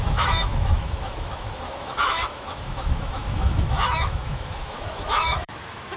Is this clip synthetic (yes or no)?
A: yes